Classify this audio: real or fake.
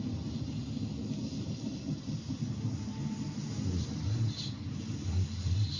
real